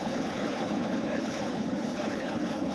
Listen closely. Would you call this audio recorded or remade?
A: remade